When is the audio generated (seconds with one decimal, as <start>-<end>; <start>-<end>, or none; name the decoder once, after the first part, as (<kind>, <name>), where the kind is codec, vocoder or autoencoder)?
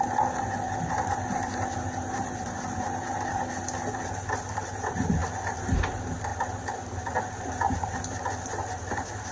none